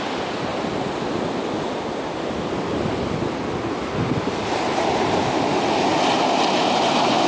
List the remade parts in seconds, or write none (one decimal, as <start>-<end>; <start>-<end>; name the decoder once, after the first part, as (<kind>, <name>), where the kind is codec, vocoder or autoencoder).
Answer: 5.9-6.4 (vocoder, BigVGAN v2)

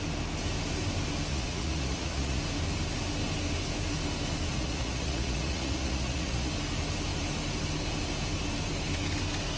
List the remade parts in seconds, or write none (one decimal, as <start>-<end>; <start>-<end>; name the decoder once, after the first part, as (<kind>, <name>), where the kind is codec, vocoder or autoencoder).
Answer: 1.3-2.4 (vocoder, Vocos); 4.5-6.5